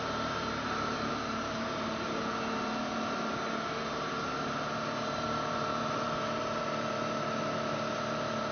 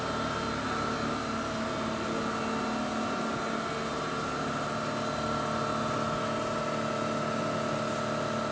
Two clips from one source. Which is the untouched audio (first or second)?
second